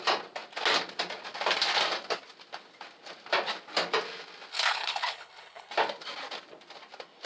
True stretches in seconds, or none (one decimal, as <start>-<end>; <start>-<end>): 0.0-4.5; 5.7-7.3